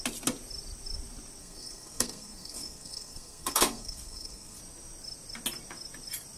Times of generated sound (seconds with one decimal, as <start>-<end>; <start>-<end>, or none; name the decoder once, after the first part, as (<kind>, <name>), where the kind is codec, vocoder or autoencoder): 1.4-4.6 (codec, SNAC)